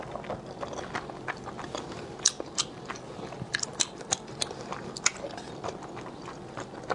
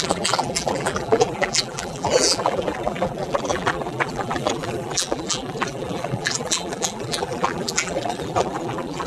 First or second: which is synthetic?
second